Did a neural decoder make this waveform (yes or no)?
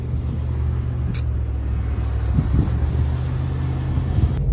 no